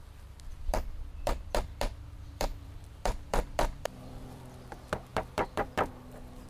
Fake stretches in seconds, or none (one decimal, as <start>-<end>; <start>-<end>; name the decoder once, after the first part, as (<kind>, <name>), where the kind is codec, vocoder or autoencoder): 0.5-4.4 (vocoder, BigVGAN v2); 5.1-5.9